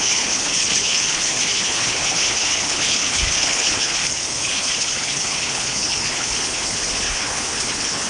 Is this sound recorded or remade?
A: remade